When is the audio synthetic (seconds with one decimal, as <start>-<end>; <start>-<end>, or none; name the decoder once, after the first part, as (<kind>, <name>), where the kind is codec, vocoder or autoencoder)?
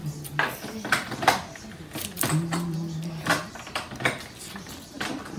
none